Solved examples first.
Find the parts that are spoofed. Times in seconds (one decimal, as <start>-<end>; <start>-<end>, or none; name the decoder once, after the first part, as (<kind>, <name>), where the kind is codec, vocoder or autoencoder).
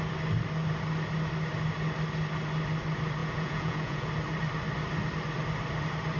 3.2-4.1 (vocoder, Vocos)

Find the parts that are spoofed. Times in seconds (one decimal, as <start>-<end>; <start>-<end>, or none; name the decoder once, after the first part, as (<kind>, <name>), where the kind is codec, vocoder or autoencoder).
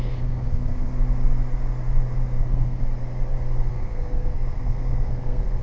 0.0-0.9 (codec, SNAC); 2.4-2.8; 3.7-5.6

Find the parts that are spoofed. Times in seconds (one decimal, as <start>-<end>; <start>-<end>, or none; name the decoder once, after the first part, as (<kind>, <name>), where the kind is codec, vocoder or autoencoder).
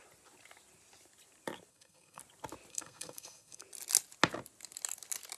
1.7-2.2 (codec, SNAC); 2.7-3.6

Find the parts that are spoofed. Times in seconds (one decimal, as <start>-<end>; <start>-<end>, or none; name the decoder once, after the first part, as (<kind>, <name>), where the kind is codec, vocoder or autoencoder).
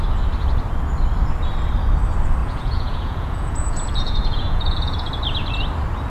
2.4-5.1 (vocoder, Vocos)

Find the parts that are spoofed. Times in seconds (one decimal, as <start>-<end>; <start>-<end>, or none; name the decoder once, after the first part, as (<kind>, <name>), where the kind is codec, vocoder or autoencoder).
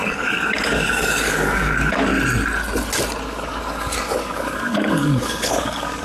0.0-2.1 (codec, DAC); 3.2-6.0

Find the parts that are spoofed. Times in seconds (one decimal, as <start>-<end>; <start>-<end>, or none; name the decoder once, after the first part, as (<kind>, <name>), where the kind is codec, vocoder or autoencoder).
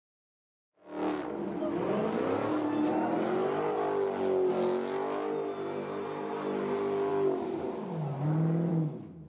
none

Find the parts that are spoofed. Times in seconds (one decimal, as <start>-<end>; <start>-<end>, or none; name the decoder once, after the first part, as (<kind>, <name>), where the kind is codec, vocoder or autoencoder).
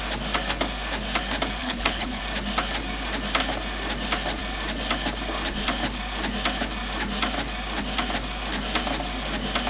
1.6-2.2 (codec, HILCodec)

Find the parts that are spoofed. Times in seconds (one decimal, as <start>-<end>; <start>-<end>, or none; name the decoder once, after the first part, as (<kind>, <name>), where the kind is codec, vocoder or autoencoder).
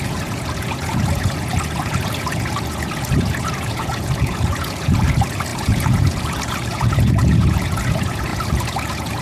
0.0-9.2 (vocoder, Vocos)